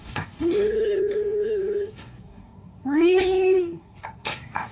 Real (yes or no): no